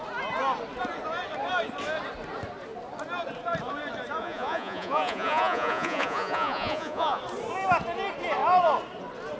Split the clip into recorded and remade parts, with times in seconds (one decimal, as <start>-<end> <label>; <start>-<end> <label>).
0.0-4.2 recorded; 4.2-7.2 remade; 7.2-9.4 recorded